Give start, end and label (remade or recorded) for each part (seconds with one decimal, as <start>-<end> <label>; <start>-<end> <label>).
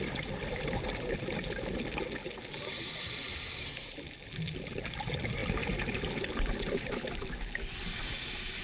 0.0-8.6 recorded